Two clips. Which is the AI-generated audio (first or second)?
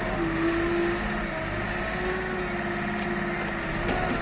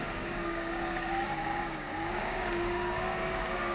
second